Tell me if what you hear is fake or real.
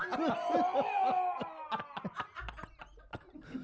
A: real